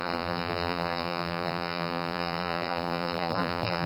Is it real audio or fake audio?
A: fake